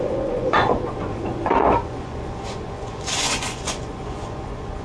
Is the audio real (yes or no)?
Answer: no